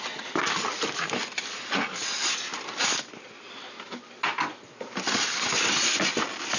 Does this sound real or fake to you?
real